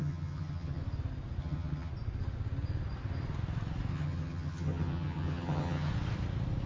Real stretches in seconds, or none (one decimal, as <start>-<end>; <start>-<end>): 0.8-1.4; 1.9-3.9; 5.9-6.7